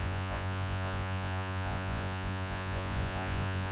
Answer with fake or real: fake